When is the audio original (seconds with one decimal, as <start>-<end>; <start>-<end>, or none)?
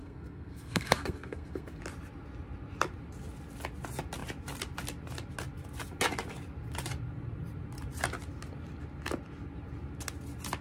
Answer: 1.8-10.6